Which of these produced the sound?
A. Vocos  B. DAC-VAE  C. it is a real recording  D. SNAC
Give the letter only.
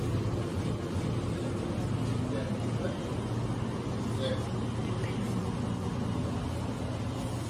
C